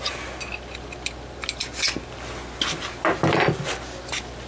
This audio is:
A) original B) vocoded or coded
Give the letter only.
A